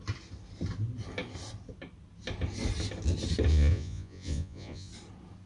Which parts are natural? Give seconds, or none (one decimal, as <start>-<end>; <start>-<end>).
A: 0.0-3.5; 4.9-5.5